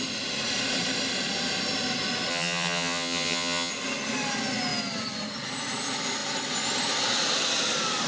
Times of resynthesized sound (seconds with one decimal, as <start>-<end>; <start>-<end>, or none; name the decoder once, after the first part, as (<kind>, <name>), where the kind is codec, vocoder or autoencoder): 2.3-3.7 (vocoder, HiFi-GAN)